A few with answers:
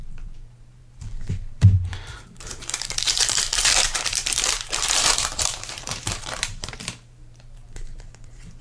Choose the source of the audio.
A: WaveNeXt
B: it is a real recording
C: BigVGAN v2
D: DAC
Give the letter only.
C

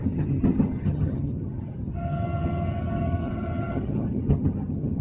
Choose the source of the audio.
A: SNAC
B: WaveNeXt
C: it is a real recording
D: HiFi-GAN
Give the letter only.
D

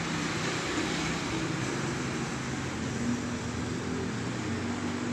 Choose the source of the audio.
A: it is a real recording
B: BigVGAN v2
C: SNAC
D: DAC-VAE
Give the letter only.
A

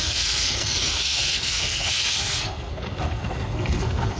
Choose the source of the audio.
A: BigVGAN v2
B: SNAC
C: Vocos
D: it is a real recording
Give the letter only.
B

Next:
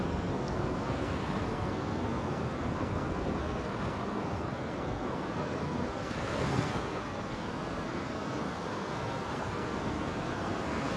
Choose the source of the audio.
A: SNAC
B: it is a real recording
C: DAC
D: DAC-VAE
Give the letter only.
A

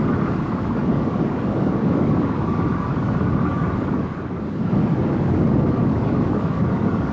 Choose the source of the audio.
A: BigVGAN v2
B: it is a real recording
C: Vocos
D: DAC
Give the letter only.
D